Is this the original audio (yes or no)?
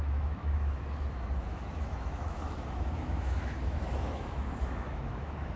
no